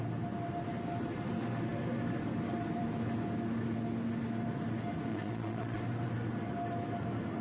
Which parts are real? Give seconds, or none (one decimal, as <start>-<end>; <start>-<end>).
0.0-5.1; 5.8-7.4